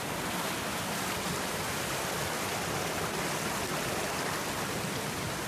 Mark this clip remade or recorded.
recorded